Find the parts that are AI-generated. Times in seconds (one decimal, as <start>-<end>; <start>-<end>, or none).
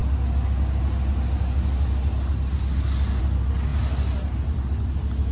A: none